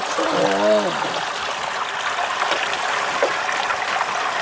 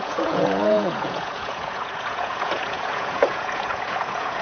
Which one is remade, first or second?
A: second